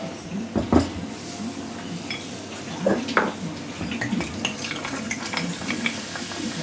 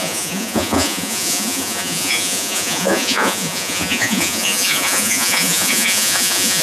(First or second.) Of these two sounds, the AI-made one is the second